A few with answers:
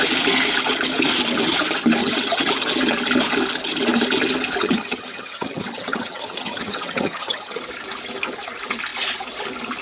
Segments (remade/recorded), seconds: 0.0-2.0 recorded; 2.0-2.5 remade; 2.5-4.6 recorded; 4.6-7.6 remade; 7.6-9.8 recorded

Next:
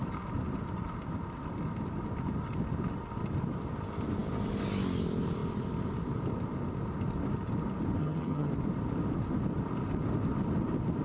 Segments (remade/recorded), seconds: 0.0-8.0 recorded; 8.0-8.5 remade; 8.5-11.0 recorded

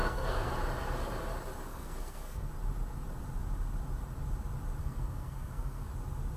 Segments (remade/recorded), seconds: 0.0-0.5 remade; 0.5-1.7 recorded; 1.7-2.5 remade; 2.5-4.8 recorded; 4.8-5.9 remade; 5.9-6.4 recorded

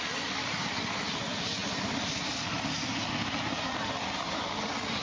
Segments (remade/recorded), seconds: 0.0-5.0 recorded

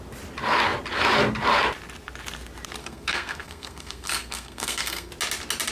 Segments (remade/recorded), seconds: 0.0-2.8 recorded; 2.8-5.1 remade; 5.1-5.7 recorded

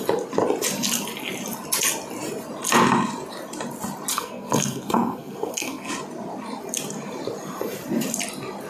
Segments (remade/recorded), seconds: 0.0-4.1 recorded; 4.1-5.9 remade; 5.9-8.7 recorded

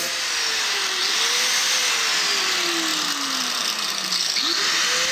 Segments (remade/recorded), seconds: 0.0-5.1 recorded